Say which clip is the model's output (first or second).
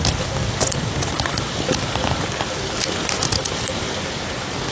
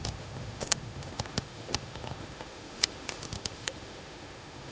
second